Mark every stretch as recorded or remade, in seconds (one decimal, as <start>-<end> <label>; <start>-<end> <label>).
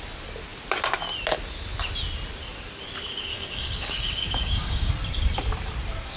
0.0-3.3 recorded; 3.3-4.9 remade; 4.9-6.2 recorded